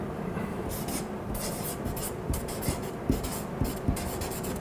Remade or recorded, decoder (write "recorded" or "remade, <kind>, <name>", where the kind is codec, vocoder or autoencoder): recorded